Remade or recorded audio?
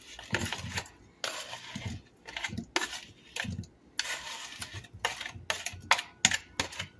recorded